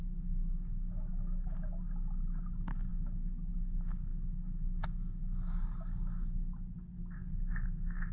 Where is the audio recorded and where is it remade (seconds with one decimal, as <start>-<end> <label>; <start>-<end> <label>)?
0.0-8.1 recorded